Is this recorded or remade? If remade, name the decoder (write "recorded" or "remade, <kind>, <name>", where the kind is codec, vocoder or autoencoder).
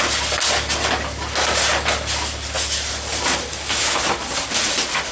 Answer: recorded